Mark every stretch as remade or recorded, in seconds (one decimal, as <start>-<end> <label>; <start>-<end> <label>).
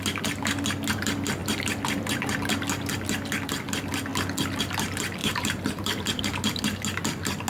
0.0-5.2 recorded; 5.2-6.2 remade; 6.2-7.5 recorded